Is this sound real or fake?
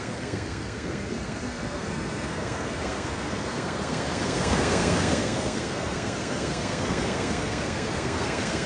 fake